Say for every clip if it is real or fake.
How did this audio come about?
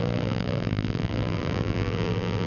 fake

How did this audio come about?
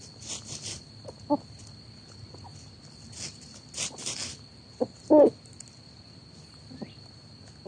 real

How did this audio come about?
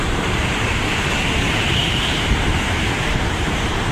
fake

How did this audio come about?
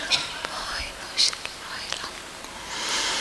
fake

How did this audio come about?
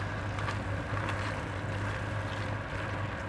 real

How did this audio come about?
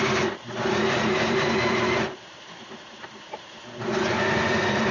fake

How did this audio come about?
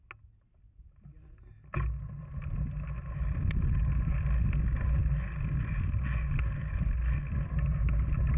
real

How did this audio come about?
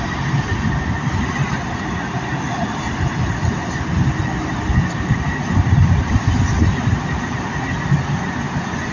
real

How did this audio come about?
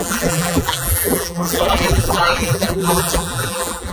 fake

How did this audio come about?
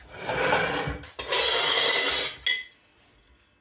real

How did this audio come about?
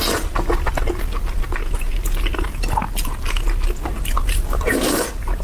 real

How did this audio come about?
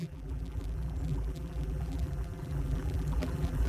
fake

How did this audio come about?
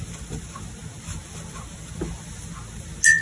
real